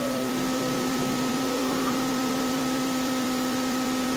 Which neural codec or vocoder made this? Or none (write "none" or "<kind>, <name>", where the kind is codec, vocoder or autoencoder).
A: vocoder, BigVGAN v2